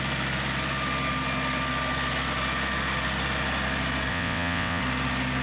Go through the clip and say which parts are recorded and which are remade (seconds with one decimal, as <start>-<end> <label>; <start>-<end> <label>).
0.0-4.1 recorded; 4.1-4.8 remade; 4.8-5.4 recorded